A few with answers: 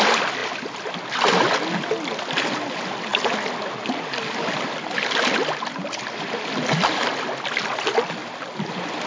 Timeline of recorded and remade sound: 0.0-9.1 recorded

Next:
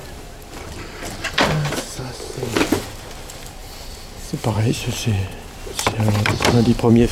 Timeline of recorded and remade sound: 0.0-2.0 remade; 2.0-3.6 recorded; 3.6-7.1 remade

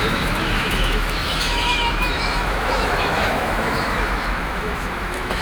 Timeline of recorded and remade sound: 0.0-5.4 remade

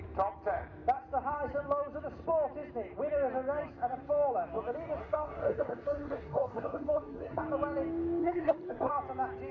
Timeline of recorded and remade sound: 0.0-5.0 recorded; 5.0-7.4 remade; 7.4-8.2 recorded; 8.2-8.9 remade; 8.9-9.5 recorded

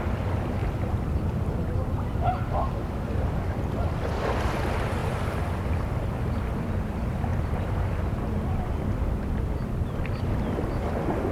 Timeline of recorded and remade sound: 0.0-5.0 recorded; 5.0-5.9 remade; 5.9-7.3 recorded; 7.3-8.7 remade; 8.7-11.3 recorded

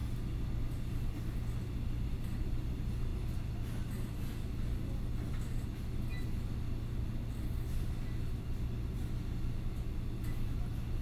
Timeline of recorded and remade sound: 0.0-11.0 recorded

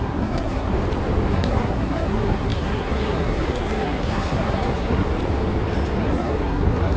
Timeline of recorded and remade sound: 0.0-0.7 remade; 0.7-1.3 recorded; 1.3-5.1 remade; 5.1-6.0 recorded; 6.0-7.0 remade